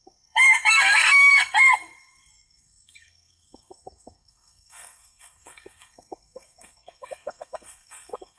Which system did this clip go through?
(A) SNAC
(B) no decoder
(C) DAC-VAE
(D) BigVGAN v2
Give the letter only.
A